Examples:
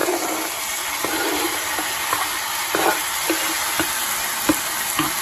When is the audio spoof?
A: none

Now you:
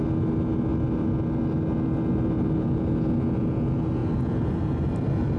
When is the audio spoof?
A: 4.0-5.4

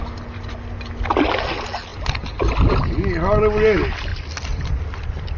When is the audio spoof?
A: none